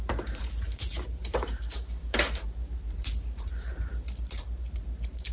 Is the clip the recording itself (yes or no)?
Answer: no